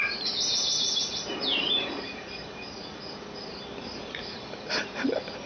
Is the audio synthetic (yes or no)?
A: yes